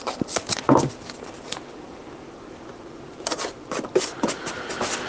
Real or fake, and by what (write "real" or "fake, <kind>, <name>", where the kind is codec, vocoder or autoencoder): fake, vocoder, BigVGAN v2